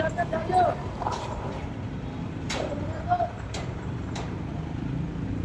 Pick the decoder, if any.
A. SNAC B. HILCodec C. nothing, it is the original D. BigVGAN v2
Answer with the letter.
D